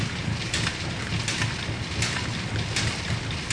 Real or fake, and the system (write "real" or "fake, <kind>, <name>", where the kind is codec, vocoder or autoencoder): real